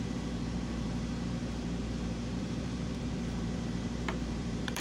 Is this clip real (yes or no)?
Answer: no